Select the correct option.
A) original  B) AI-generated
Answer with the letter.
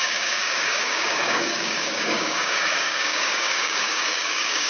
B